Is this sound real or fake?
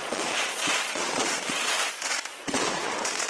fake